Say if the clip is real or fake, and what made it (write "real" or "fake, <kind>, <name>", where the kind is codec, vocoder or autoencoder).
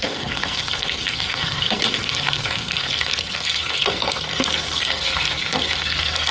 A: fake, codec, SNAC